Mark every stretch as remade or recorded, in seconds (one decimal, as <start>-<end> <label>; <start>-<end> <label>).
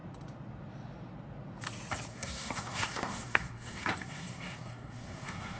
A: 0.0-2.1 recorded; 2.1-5.6 remade